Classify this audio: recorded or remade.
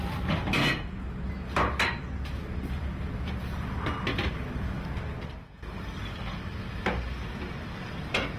recorded